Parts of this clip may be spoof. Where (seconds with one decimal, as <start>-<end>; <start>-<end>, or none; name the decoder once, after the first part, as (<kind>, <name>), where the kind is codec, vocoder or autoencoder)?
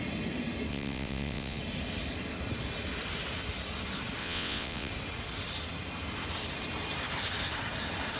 0.7-1.6 (vocoder, WaveNeXt); 4.2-4.9